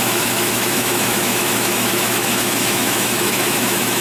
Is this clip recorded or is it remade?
remade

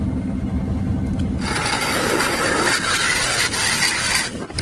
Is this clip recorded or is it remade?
recorded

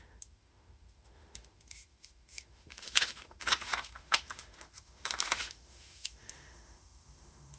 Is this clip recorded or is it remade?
remade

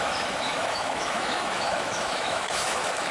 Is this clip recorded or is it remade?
remade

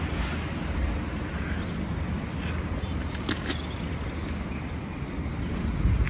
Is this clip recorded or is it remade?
recorded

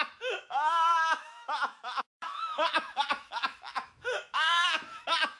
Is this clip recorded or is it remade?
remade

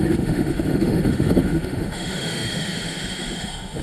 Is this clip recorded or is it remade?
remade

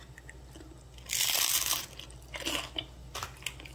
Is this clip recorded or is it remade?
recorded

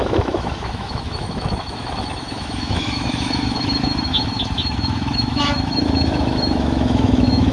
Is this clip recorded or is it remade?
remade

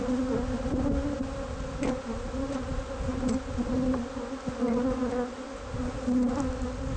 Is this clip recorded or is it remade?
recorded